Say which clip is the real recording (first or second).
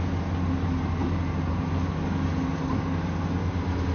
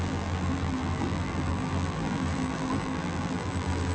first